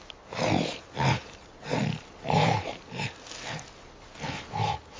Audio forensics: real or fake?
real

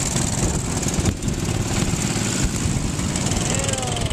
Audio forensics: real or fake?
real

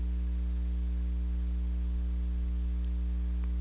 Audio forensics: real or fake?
real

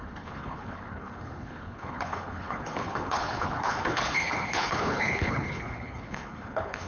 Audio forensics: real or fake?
fake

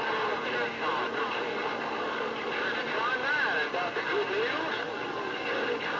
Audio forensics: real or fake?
real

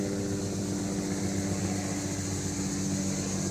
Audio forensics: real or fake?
real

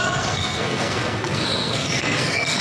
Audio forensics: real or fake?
fake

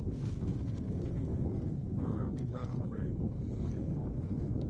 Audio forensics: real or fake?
fake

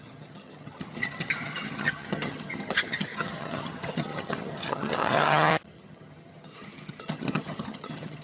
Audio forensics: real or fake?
fake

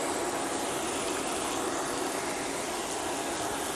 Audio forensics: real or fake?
real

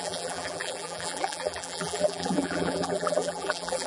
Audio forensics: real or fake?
fake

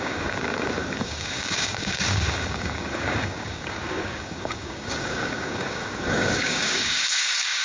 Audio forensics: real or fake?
fake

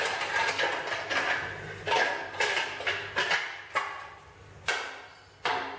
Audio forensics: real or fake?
real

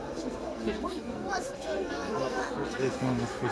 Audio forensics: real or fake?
fake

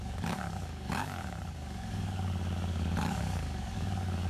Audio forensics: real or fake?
fake